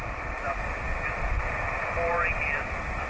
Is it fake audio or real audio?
real